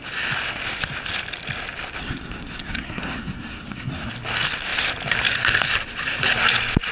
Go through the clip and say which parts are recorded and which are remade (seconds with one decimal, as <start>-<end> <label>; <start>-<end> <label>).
0.0-2.0 recorded; 2.0-4.1 remade; 4.1-6.9 recorded